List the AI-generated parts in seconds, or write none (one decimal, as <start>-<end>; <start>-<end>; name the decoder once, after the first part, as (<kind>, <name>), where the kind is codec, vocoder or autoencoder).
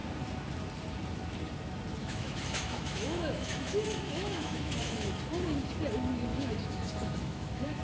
2.0-5.1 (autoencoder, DAC-VAE); 6.3-7.8